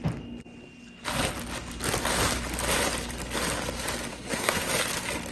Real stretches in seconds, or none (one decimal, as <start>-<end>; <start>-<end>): 0.0-4.1; 4.7-5.3